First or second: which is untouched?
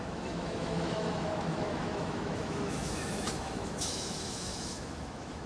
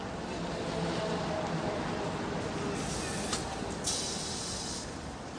second